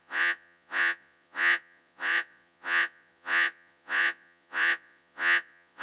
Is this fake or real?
fake